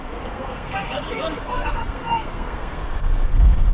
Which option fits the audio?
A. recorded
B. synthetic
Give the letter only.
B